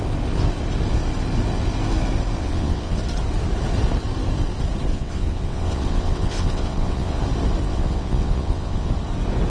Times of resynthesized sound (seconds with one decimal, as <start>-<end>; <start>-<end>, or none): 2.4-3.0; 4.9-7.2; 7.7-8.9